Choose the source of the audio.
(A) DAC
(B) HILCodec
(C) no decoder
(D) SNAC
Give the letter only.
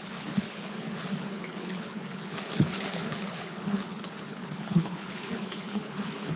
B